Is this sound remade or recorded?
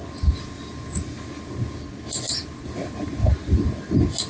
recorded